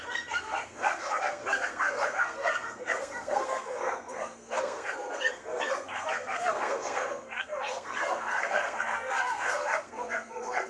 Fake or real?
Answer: fake